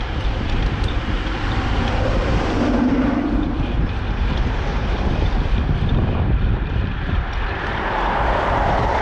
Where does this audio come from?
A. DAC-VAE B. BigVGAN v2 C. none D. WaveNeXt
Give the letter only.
B